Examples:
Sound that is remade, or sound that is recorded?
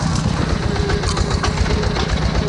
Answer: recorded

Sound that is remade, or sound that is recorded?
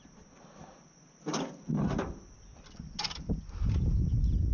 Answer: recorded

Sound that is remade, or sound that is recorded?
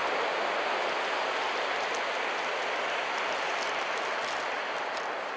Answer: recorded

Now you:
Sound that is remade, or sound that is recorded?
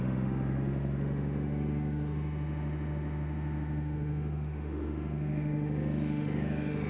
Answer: remade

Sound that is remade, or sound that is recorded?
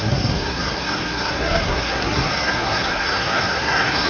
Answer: remade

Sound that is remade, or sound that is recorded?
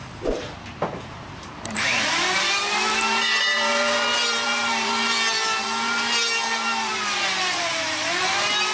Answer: remade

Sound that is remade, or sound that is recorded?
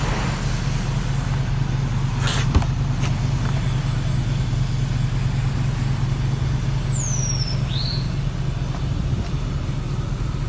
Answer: recorded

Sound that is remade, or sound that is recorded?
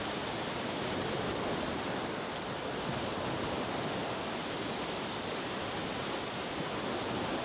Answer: recorded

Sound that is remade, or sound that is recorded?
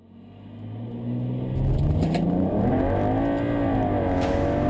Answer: recorded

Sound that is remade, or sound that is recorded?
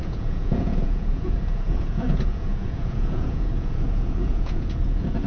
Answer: remade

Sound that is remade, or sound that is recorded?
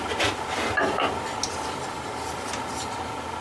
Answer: recorded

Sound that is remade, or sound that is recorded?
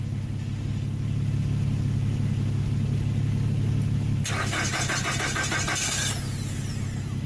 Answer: recorded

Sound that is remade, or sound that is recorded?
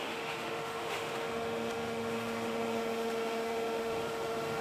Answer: remade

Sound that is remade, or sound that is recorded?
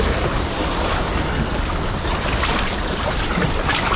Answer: recorded